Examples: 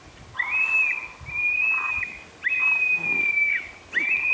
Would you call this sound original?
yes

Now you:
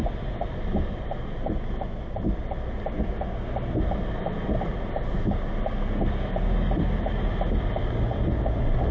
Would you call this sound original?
yes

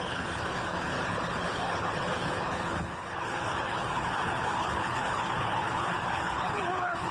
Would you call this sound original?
no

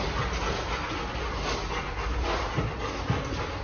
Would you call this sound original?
yes